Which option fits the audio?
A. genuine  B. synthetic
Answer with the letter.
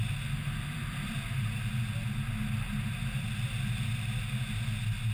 A